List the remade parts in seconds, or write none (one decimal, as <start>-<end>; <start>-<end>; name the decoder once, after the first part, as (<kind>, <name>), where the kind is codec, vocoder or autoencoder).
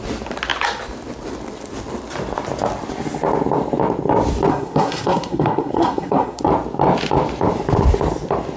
4.5-6.4 (codec, SNAC)